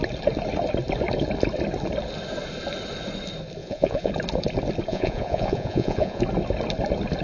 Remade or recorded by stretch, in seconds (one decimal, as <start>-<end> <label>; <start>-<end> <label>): 0.0-3.6 recorded; 3.6-4.1 remade; 4.1-4.9 recorded; 4.9-6.2 remade; 6.2-7.2 recorded